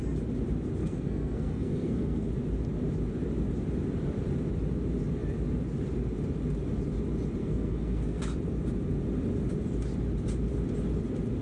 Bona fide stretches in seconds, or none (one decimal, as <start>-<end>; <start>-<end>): 0.0-0.8; 2.3-7.4; 8.2-11.4